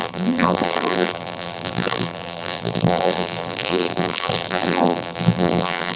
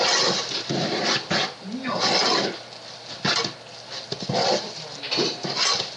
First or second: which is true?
second